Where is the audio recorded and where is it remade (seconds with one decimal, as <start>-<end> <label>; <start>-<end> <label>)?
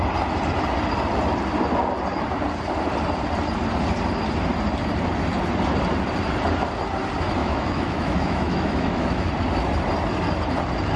0.0-7.4 recorded; 7.4-9.3 remade; 9.3-11.0 recorded